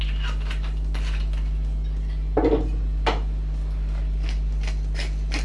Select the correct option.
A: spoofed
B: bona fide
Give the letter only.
B